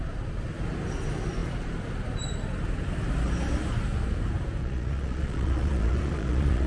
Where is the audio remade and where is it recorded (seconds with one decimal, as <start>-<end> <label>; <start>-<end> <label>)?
0.0-4.6 recorded; 4.6-6.7 remade